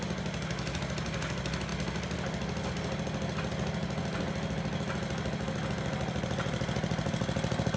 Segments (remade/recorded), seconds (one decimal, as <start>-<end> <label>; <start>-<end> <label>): 0.0-7.8 recorded